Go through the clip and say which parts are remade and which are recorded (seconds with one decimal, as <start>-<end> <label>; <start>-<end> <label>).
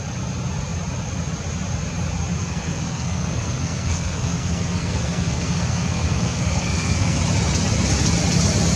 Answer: 0.0-2.4 recorded; 2.4-7.2 remade; 7.2-8.8 recorded